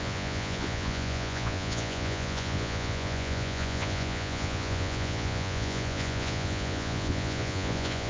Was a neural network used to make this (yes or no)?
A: yes